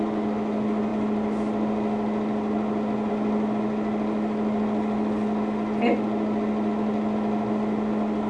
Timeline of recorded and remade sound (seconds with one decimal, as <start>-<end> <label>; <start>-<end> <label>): 0.0-8.3 recorded